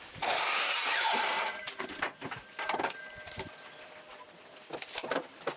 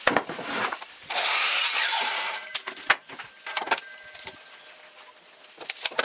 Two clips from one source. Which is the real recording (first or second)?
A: second